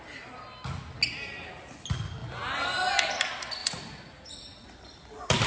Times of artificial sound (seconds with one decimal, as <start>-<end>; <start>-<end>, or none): 3.6-5.5